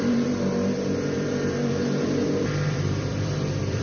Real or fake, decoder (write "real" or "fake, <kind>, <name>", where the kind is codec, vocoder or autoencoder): fake, vocoder, BigVGAN v2